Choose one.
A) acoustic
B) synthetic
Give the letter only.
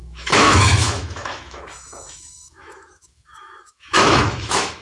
B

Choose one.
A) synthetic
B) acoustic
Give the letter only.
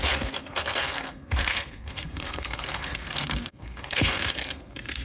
A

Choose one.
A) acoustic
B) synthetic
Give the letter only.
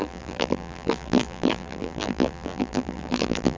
B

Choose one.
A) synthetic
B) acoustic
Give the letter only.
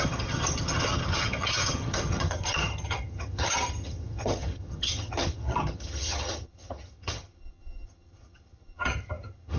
A